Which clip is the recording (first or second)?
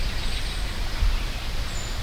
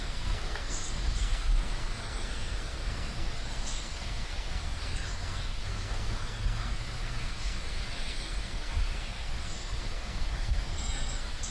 first